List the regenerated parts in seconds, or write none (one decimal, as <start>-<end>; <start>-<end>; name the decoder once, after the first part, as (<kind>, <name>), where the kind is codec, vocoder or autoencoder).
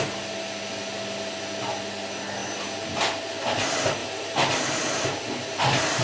4.0-6.0 (vocoder, BigVGAN v2)